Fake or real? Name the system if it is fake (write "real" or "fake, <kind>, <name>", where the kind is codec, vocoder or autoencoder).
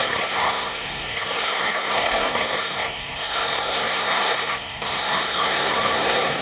fake, codec, SNAC